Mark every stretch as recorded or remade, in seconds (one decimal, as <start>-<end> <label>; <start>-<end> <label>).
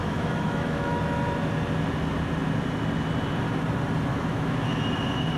0.0-1.0 remade; 1.0-4.1 recorded; 4.1-4.8 remade; 4.8-5.4 recorded